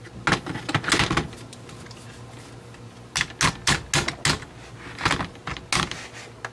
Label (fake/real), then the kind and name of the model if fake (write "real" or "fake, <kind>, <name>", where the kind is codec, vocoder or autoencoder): real